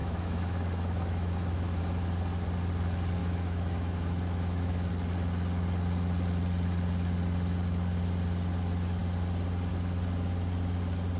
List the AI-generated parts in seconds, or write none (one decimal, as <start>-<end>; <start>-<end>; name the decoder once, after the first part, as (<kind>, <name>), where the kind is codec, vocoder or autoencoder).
0.0-1.8 (autoencoder, DAC-VAE); 3.2-4.9